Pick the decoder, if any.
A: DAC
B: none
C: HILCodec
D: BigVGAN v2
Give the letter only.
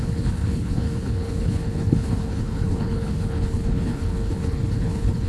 C